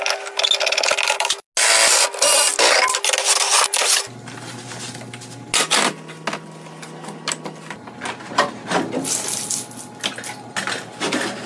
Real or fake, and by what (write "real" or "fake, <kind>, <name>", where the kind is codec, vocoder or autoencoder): real